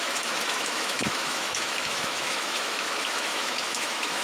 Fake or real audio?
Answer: fake